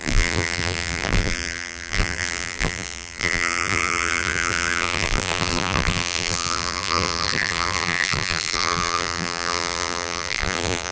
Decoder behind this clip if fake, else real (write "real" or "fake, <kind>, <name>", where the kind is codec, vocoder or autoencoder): fake, vocoder, BigVGAN v2